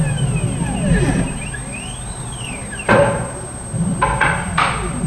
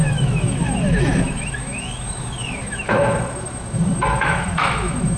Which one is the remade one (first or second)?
second